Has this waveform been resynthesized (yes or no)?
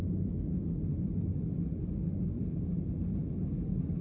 no